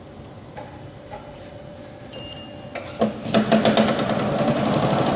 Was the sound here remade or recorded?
recorded